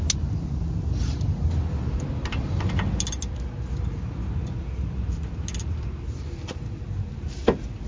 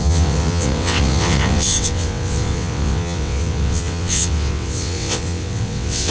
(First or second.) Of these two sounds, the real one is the first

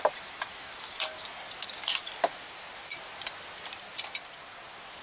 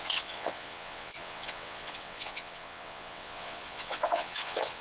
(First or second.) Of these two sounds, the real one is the first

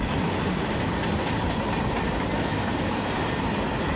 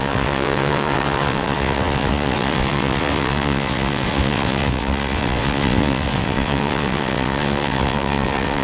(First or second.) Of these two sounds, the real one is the first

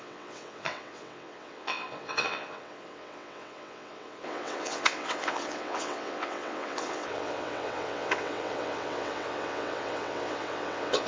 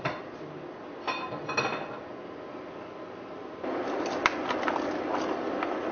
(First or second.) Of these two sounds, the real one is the second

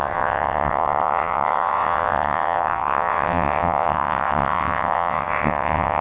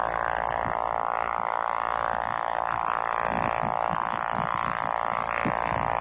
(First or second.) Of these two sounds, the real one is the second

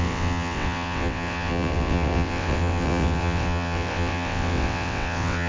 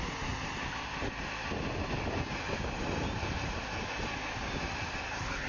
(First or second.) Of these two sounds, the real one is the second